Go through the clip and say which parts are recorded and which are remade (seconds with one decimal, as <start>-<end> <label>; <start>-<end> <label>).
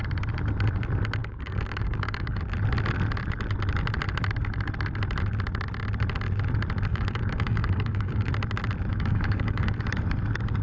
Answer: 0.0-1.2 recorded; 1.2-2.4 remade; 2.4-6.9 recorded; 6.9-8.3 remade; 8.3-8.9 recorded; 8.9-9.7 remade; 9.7-10.6 recorded